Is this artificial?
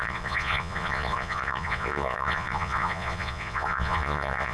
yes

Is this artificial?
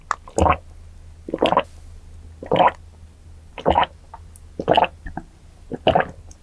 no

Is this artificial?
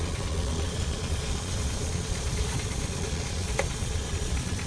yes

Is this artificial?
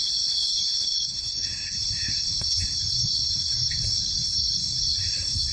yes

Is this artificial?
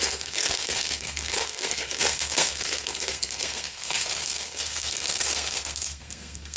yes